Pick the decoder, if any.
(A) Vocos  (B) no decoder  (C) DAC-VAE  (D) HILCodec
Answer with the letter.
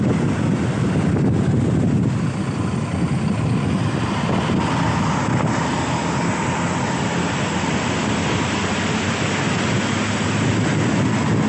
B